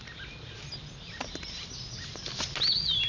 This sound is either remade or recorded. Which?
recorded